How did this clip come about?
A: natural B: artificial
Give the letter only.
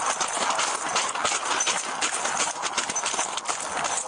A